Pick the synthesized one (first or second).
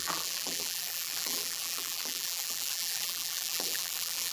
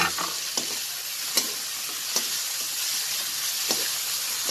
first